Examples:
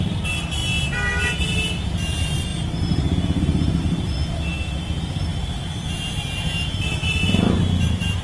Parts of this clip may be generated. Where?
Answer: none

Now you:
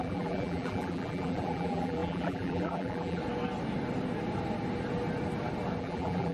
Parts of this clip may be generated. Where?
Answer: 0.0-3.2 (vocoder, BigVGAN v2); 5.8-6.3

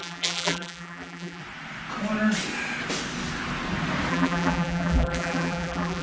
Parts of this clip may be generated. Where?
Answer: 0.0-1.4 (vocoder, BigVGAN v2); 4.1-6.0

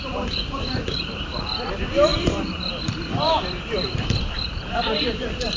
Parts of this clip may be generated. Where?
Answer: 0.0-5.6 (vocoder, BigVGAN v2)

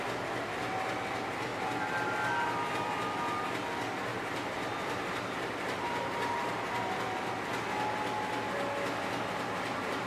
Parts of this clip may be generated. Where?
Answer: 4.1-6.8 (vocoder, BigVGAN v2)